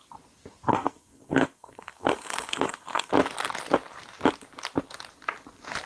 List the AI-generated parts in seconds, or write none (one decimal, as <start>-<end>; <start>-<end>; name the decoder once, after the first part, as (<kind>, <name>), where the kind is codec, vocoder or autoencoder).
0.7-3.1 (codec, SNAC)